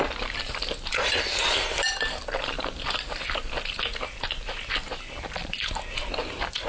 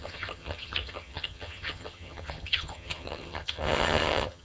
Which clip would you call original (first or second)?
first